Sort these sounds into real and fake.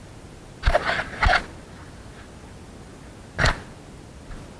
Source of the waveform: real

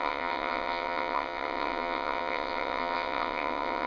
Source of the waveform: fake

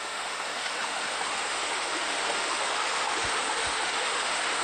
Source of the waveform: fake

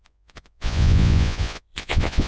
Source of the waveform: fake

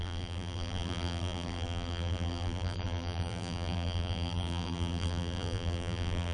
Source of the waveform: fake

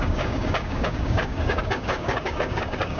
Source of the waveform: fake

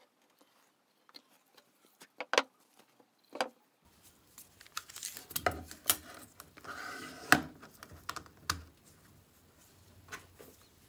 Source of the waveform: real